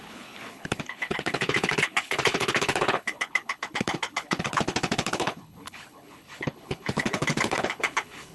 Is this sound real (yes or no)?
no